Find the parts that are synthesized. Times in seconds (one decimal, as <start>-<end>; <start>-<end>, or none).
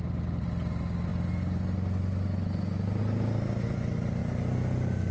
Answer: none